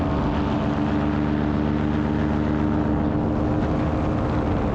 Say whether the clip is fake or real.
real